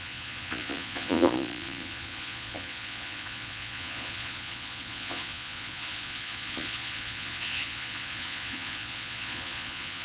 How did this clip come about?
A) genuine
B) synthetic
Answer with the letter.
B